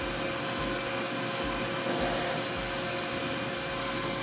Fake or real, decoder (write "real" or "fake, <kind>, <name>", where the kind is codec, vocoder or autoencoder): real